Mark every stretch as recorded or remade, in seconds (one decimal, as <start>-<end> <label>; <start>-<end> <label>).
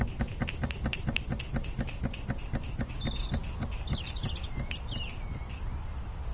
0.0-6.3 recorded